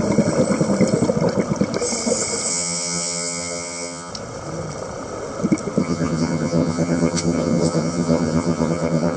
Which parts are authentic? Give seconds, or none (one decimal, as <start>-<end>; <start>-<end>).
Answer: 0.0-2.5; 4.1-5.8